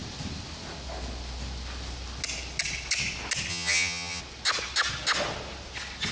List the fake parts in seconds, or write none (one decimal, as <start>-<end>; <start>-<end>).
3.5-4.2